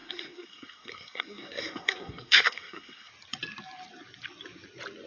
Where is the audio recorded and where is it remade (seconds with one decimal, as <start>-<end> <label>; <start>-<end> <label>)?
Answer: 0.0-3.1 remade; 3.1-5.1 recorded

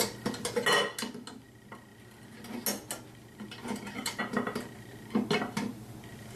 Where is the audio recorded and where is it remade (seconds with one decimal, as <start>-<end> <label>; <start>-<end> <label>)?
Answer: 0.0-6.4 recorded

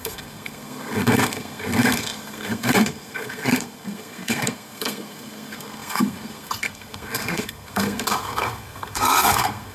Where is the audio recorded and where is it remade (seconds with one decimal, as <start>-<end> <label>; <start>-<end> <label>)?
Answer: 0.0-9.7 remade

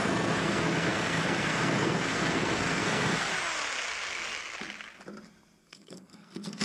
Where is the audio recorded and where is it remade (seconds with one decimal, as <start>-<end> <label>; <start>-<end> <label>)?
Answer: 0.0-3.3 remade; 3.3-5.6 recorded; 5.6-6.6 remade